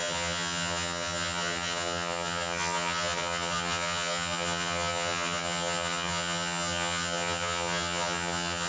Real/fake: fake